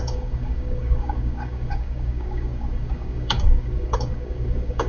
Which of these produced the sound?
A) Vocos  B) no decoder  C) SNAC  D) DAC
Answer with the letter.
D